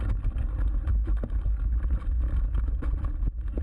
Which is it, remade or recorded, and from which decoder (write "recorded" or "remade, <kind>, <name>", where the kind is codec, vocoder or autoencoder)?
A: recorded